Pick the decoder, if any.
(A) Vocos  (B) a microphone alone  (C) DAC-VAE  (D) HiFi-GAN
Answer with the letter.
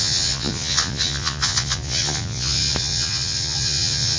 A